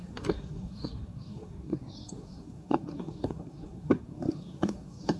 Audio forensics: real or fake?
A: fake